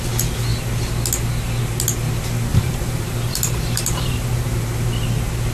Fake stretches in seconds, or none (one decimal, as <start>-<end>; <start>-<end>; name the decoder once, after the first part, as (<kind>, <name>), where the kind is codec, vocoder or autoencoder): 2.5-4.6 (vocoder, BigVGAN v2)